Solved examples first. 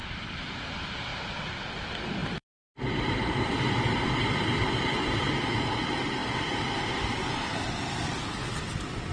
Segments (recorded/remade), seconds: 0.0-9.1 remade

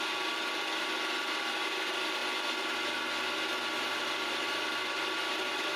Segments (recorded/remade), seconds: 0.0-2.2 remade; 2.2-3.5 recorded; 3.5-5.8 remade